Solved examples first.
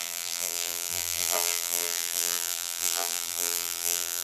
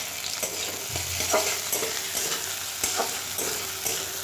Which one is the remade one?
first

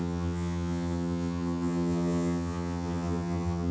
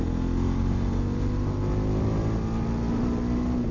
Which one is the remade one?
first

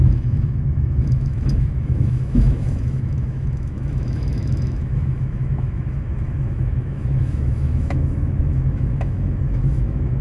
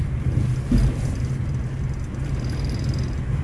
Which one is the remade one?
first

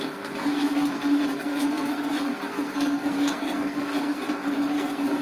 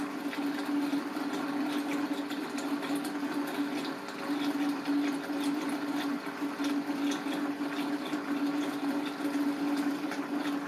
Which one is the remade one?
first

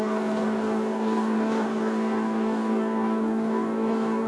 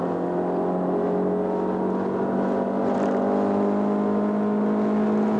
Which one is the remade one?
first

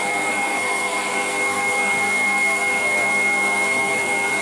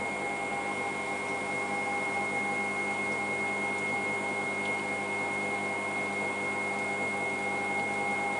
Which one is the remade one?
first